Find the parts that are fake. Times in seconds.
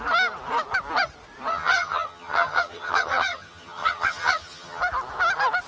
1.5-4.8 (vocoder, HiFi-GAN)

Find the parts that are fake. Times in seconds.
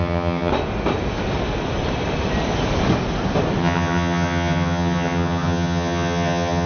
0.0-0.5 (vocoder, HiFi-GAN); 3.6-6.7